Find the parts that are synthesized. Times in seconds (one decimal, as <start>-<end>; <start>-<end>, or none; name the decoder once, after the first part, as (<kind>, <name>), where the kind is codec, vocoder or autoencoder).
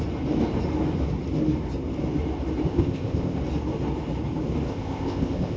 2.7-3.4 (codec, ZipCodec); 4.7-5.6